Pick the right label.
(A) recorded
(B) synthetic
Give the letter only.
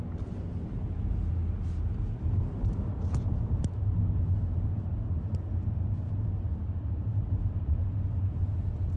A